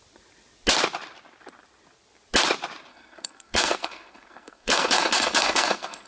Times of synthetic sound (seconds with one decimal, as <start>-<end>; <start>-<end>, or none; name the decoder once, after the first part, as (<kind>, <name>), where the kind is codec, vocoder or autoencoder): 2.9-6.1 (codec, SNAC)